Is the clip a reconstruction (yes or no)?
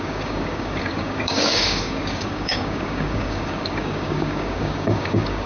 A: yes